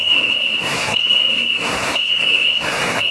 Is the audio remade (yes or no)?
yes